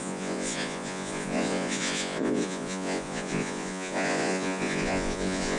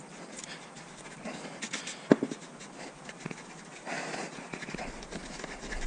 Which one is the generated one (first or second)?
first